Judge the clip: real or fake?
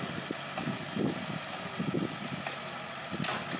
real